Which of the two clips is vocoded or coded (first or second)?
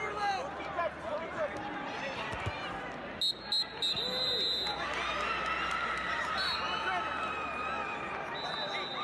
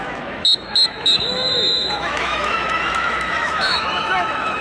second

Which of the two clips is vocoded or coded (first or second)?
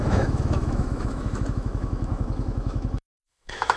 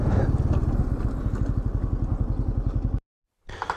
first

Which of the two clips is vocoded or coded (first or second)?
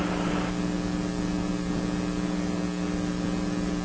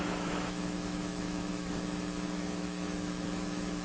second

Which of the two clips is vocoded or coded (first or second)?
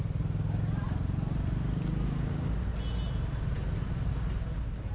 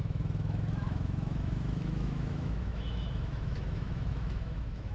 second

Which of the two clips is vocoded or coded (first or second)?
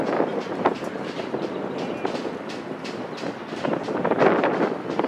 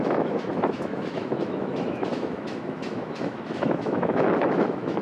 second